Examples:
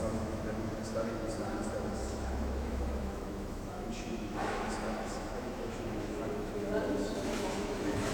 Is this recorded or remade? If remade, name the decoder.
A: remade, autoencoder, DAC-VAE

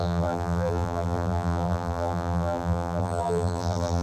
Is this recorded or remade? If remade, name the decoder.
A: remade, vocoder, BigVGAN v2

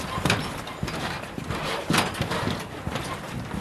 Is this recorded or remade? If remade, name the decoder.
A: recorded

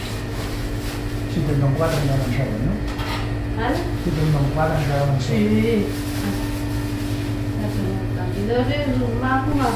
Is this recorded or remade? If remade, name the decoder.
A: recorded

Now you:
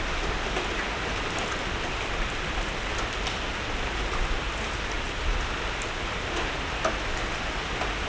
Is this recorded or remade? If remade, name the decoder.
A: recorded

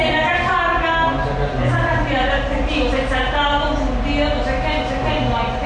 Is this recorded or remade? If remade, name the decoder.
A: recorded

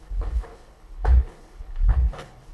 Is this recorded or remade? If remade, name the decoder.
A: remade, codec, HILCodec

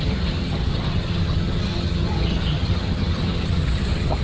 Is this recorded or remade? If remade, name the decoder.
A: remade, vocoder, HiFi-GAN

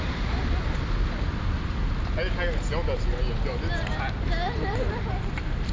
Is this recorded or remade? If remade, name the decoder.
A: recorded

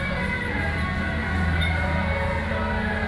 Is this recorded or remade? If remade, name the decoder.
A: recorded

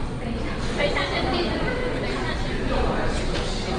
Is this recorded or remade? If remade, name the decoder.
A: recorded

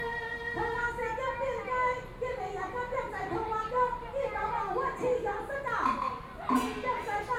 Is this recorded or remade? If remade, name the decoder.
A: recorded